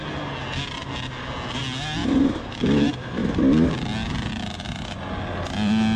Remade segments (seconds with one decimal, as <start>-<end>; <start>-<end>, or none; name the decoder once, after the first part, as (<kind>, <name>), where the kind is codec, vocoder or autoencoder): 2.0-2.8 (vocoder, BigVGAN v2)